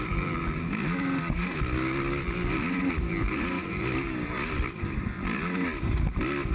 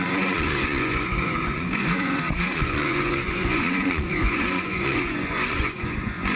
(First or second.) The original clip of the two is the first